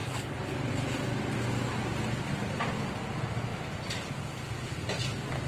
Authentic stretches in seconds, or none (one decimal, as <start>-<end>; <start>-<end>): 0.7-3.5; 4.4-5.5